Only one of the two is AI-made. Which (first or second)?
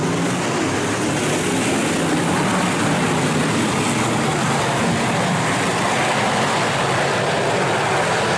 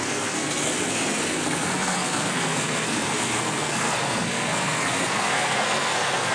second